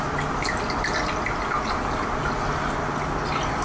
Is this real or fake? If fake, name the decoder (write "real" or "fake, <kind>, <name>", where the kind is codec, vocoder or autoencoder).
real